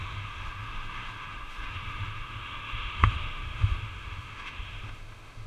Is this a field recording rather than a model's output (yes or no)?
no